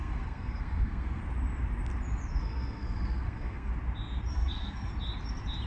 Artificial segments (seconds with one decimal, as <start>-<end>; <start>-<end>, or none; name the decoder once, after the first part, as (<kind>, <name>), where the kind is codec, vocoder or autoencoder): 0.0-1.2 (codec, SNAC); 2.4-3.7; 4.3-4.9